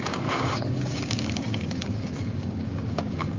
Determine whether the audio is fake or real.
fake